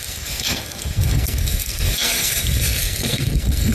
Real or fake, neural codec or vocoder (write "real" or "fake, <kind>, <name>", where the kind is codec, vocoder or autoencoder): fake, codec, SNAC